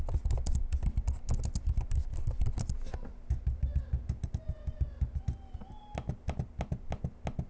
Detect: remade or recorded recorded